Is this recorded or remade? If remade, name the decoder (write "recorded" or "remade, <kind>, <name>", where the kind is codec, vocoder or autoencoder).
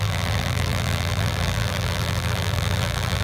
remade, vocoder, BigVGAN v2